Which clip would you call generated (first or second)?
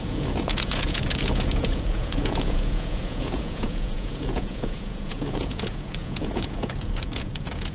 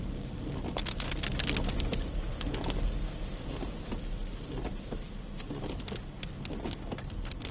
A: first